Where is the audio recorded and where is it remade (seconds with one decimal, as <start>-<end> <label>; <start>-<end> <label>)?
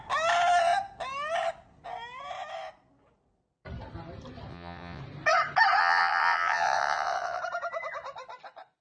0.0-4.5 recorded; 4.5-5.0 remade; 5.0-5.8 recorded; 5.8-7.4 remade; 7.4-8.8 recorded